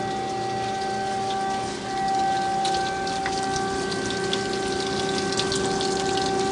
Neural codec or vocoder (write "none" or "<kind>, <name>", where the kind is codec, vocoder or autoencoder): none